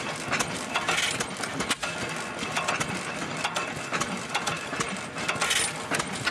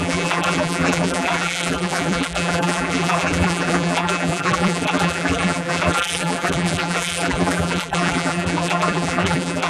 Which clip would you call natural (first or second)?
first